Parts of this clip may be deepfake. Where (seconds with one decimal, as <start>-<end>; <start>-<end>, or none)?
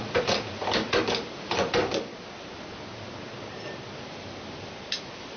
0.0-2.1; 5.0-5.4